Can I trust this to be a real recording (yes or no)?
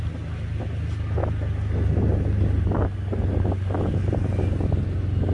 yes